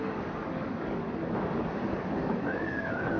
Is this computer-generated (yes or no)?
yes